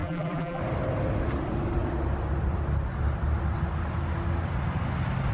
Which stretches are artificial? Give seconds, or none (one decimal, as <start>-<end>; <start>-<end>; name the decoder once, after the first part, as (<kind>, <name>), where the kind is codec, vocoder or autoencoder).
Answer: 0.0-0.6 (vocoder, BigVGAN v2)